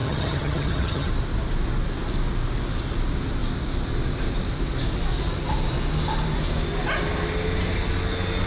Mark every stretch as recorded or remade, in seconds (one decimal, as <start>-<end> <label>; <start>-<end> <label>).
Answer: 0.0-1.1 remade; 1.1-8.5 recorded